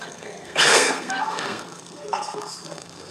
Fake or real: fake